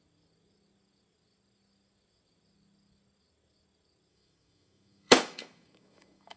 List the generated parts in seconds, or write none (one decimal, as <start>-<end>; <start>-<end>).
4.1-6.4